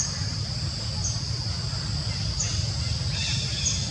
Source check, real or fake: real